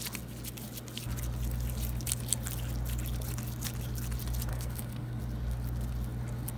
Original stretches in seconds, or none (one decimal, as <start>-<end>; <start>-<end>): 0.0-4.5; 5.2-6.6